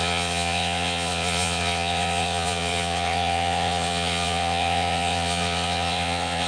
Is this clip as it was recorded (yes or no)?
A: no